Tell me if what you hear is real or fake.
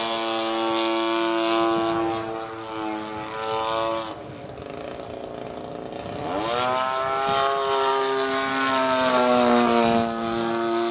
real